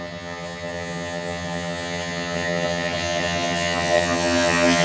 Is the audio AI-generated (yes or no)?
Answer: yes